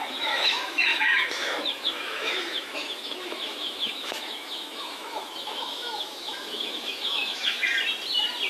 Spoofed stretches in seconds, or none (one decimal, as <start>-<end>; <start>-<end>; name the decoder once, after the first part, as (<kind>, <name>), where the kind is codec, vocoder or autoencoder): 0.0-7.6 (autoencoder, DAC-VAE)